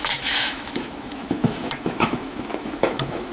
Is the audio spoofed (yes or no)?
yes